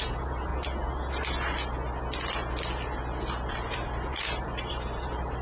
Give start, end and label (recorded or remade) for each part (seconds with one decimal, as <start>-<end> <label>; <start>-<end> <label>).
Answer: 0.0-0.5 remade; 0.5-3.5 recorded; 3.5-5.4 remade